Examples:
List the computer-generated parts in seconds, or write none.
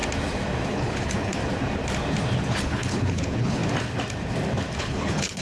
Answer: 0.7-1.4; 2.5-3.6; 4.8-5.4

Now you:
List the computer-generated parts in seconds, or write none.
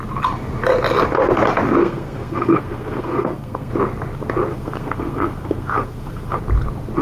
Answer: 1.8-3.7; 4.5-6.4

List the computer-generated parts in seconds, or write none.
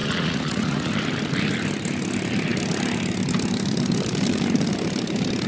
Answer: 0.0-0.9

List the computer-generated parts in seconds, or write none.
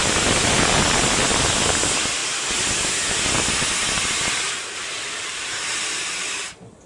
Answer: none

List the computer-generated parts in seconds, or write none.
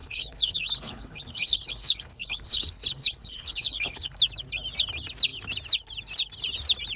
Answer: 0.0-4.2